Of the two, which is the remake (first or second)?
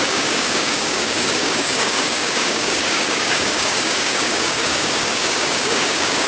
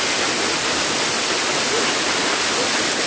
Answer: first